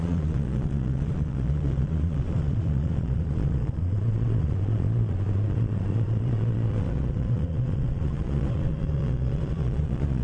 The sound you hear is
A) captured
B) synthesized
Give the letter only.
B